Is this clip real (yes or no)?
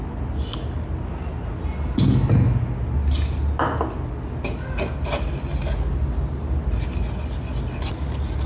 yes